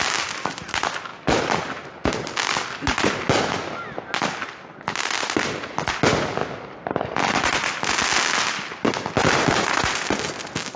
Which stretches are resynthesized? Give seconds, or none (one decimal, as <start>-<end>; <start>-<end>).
none